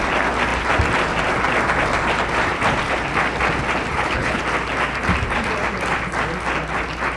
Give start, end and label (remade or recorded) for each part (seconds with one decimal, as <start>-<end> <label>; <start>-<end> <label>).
0.0-3.9 recorded; 3.9-4.4 remade; 4.4-7.2 recorded